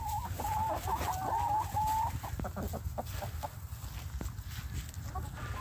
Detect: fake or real real